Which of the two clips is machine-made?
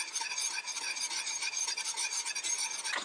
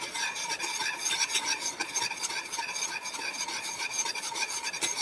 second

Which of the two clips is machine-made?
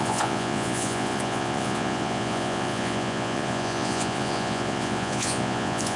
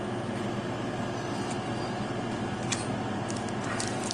first